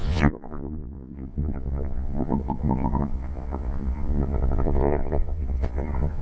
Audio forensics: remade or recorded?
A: remade